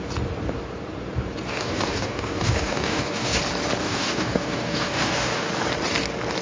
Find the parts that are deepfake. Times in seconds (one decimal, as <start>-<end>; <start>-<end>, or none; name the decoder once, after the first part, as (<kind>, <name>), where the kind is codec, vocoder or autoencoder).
1.5-3.4 (codec, DAC); 3.8-5.5